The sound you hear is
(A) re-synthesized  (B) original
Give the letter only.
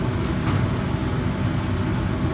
B